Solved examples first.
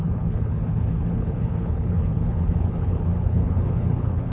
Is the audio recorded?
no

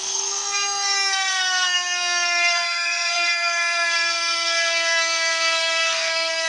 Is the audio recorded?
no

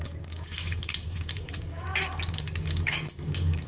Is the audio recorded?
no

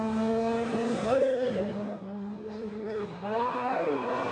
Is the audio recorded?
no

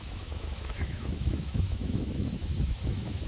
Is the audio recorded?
no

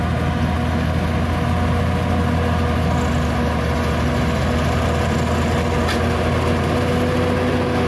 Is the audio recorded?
yes